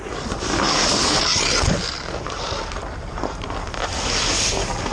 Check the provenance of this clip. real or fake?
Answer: real